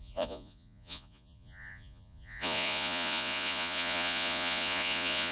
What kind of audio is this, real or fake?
fake